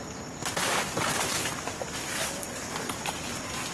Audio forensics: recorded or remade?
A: recorded